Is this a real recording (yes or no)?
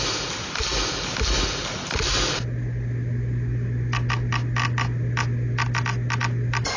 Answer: yes